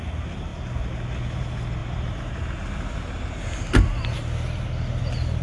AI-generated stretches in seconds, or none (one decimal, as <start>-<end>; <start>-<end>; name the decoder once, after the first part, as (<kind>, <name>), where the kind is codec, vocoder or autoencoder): none